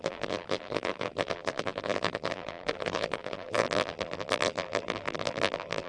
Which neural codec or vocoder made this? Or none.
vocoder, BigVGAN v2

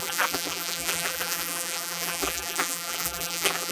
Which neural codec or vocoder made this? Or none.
vocoder, BigVGAN v2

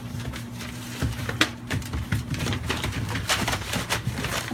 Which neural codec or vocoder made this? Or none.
vocoder, BigVGAN v2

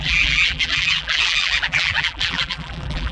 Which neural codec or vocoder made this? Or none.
vocoder, BigVGAN v2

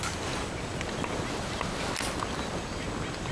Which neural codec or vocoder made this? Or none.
none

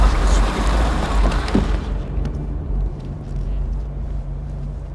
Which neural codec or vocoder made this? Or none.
vocoder, BigVGAN v2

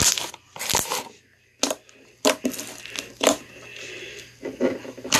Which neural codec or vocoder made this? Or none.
none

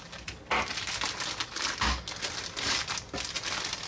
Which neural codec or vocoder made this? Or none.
none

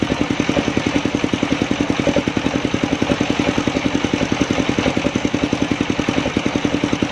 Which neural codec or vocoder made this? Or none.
none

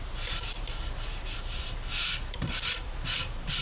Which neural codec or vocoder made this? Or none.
vocoder, BigVGAN v2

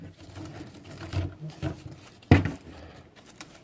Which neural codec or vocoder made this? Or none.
none